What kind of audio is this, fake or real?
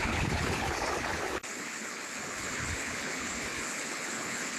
fake